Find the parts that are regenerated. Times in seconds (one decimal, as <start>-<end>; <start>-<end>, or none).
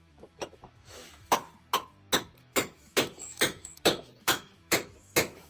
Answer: 0.0-1.4; 2.4-5.5